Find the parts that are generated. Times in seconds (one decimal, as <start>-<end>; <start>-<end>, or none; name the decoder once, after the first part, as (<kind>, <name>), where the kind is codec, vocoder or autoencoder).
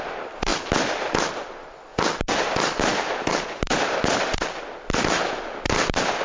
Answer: 0.0-0.5 (vocoder, BigVGAN v2); 1.4-6.2